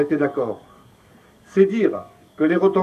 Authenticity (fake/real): fake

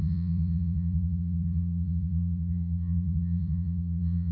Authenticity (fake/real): fake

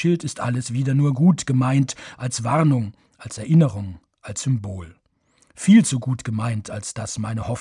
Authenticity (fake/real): real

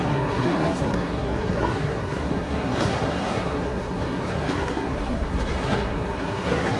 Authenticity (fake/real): fake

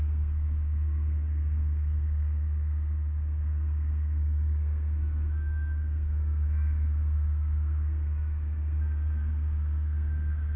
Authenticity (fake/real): fake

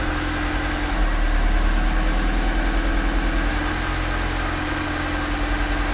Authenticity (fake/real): real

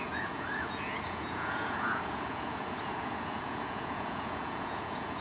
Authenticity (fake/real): fake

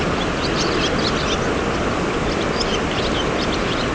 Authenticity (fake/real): real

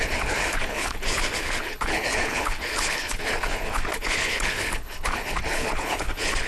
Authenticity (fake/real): fake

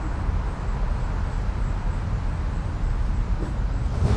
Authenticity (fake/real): real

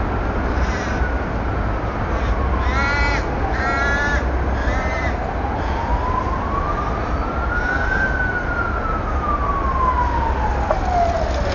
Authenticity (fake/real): real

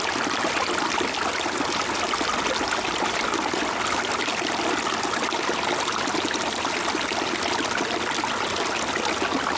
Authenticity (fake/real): real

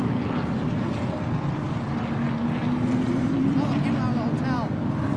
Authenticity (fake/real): real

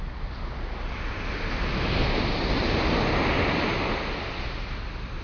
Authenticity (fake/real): real